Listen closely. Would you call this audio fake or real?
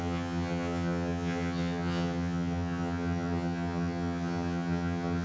fake